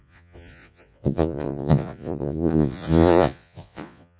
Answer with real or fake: fake